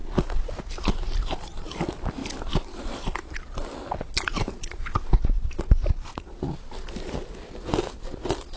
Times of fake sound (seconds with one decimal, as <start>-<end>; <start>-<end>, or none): none